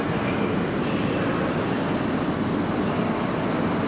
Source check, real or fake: real